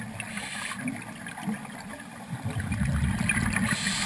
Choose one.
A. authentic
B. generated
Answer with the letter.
A